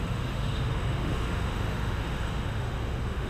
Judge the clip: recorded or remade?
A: remade